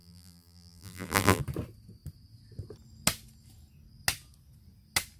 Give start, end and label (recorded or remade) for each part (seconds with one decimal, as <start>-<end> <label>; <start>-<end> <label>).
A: 0.0-1.4 remade; 1.4-5.2 recorded